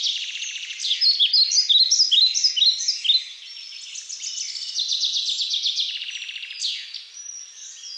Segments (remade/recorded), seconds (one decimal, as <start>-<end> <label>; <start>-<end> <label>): 0.0-8.0 recorded